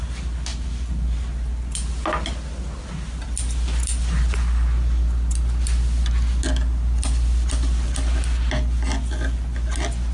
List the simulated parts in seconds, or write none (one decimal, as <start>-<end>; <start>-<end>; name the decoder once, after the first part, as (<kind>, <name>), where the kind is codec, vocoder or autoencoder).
none